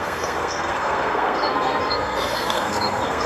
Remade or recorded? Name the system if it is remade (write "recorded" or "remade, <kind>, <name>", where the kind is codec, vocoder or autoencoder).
remade, codec, SNAC